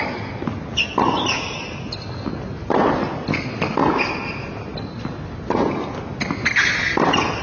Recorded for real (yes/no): yes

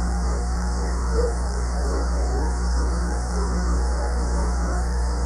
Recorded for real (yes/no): no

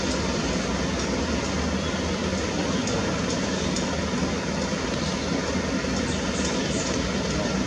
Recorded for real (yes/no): yes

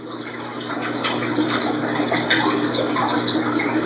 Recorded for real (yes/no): no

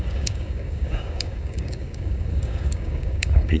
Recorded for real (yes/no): no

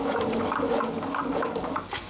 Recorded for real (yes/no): no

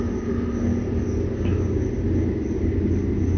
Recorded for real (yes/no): yes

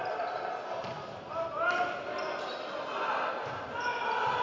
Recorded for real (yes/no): yes